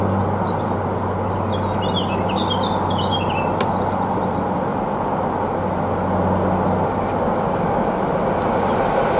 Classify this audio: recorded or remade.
recorded